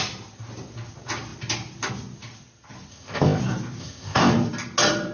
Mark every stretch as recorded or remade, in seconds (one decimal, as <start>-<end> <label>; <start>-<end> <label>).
0.0-2.9 recorded; 2.9-3.4 remade; 3.4-3.8 recorded; 3.8-4.3 remade; 4.3-5.1 recorded